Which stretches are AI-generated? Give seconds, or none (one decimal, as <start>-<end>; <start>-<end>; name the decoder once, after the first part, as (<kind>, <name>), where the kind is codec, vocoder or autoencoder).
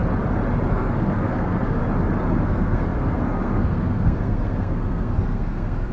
0.7-1.8 (codec, SNAC); 2.3-5.9